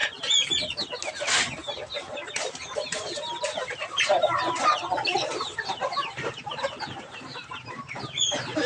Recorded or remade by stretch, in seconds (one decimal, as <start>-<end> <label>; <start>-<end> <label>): 0.0-2.5 recorded; 2.5-8.7 remade